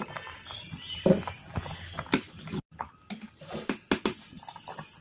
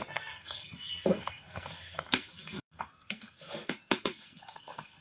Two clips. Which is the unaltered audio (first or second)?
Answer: first